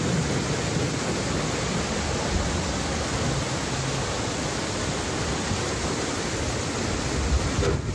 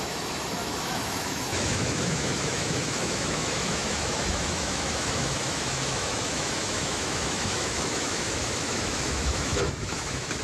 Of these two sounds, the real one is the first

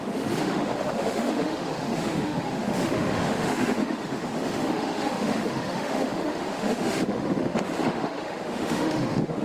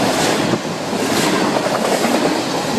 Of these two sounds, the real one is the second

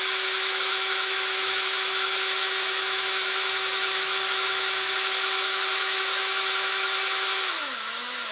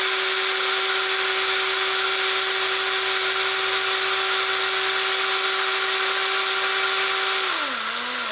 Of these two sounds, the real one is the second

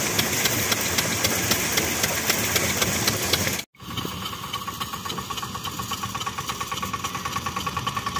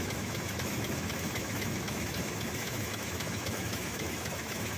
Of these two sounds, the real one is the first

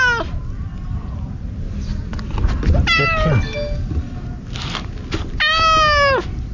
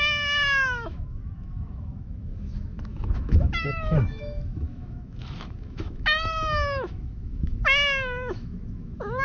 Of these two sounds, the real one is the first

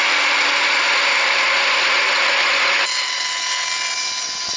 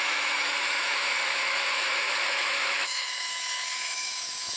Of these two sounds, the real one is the first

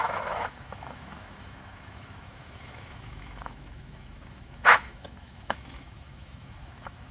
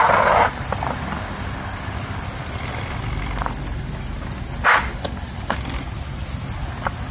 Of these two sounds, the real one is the second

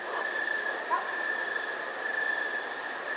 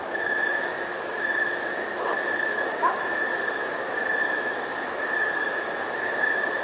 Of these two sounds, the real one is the first